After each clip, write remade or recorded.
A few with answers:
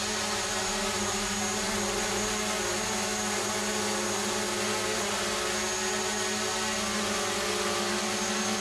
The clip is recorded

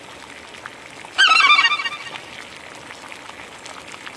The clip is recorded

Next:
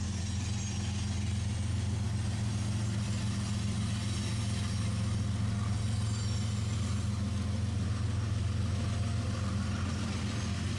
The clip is recorded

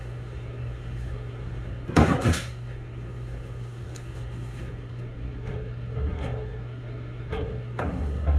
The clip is remade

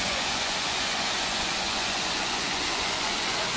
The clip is remade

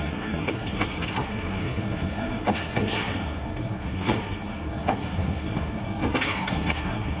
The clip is remade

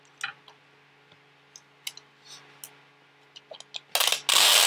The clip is recorded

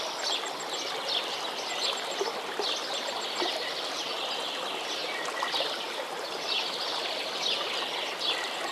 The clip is recorded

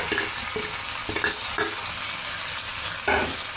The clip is recorded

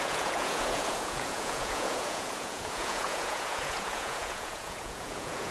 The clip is remade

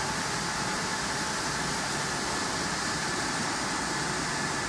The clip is recorded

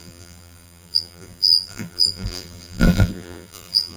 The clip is remade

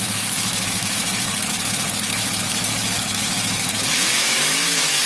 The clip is remade